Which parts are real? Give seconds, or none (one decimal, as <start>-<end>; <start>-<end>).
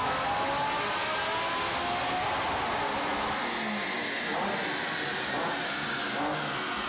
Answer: 0.0-4.3; 5.7-6.9